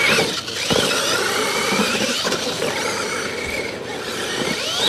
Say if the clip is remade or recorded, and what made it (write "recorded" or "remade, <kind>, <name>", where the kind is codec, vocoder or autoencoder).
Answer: recorded